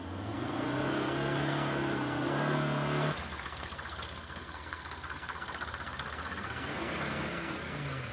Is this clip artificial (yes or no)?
yes